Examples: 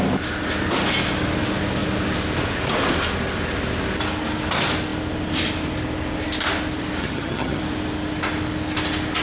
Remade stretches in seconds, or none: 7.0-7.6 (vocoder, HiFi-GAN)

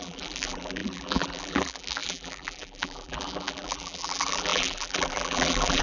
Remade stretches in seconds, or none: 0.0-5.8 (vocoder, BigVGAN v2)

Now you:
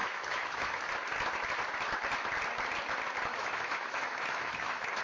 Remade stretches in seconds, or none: 0.0-0.9 (autoencoder, DAC-VAE); 3.3-5.0